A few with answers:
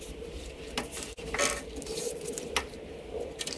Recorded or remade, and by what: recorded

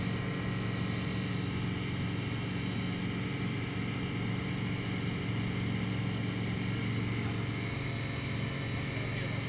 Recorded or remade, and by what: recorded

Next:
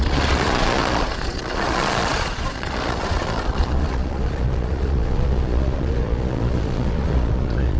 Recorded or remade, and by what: remade, vocoder, Vocos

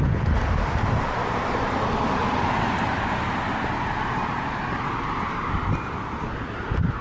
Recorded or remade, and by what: recorded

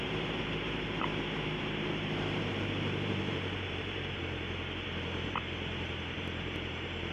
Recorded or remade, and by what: remade, vocoder, BigVGAN v2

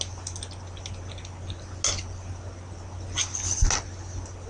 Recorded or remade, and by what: recorded